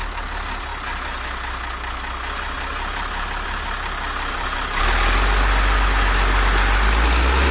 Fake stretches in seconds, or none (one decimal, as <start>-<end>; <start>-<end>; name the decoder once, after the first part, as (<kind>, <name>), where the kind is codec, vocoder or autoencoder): none